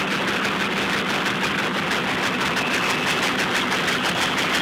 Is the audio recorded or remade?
recorded